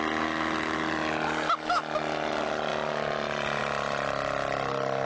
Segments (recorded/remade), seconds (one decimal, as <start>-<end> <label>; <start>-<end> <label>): 0.0-5.1 recorded